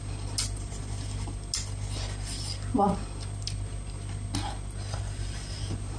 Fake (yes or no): no